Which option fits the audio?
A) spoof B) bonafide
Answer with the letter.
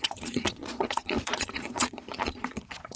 A